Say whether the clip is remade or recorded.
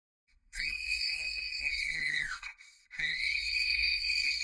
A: remade